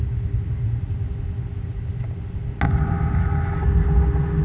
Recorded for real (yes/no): yes